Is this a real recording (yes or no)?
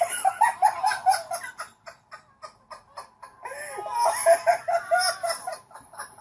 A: yes